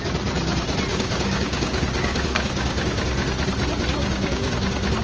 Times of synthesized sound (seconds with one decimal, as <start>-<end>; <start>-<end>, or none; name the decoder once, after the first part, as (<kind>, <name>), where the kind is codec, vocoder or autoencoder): 0.9-3.0 (codec, DAC); 4.0-4.6